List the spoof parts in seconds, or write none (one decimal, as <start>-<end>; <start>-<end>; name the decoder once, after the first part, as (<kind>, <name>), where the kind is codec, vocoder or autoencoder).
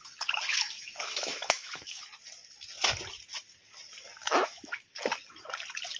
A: 0.5-2.0 (autoencoder, DAC-VAE); 4.2-4.9